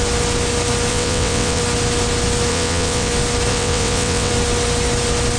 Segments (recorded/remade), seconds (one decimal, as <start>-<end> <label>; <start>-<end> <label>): 0.0-0.9 recorded; 0.9-1.6 remade; 1.6-2.5 recorded; 2.5-3.1 remade; 3.1-3.5 recorded; 3.5-4.3 remade; 4.3-5.4 recorded

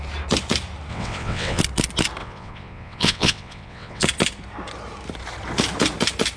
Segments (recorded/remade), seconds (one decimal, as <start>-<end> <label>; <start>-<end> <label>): 0.0-0.9 recorded; 0.9-1.6 remade; 1.6-2.2 recorded; 2.2-4.0 remade; 4.0-6.4 recorded

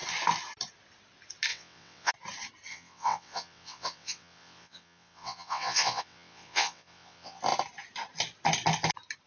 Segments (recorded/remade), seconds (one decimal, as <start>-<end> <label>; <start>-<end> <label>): 0.0-1.5 recorded; 1.5-2.1 remade; 2.1-2.7 recorded; 2.7-7.4 remade; 7.4-9.3 recorded

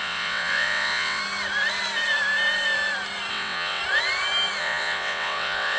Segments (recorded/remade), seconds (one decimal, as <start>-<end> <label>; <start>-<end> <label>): 0.0-1.2 remade; 1.2-3.3 recorded; 3.3-3.8 remade; 3.8-4.6 recorded; 4.6-5.8 remade

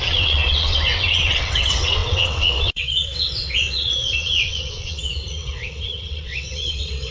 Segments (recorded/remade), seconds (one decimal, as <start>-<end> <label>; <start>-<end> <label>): 0.0-7.1 remade